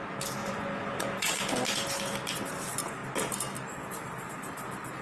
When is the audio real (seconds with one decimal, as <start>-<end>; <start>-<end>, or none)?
0.0-0.4; 1.4-5.0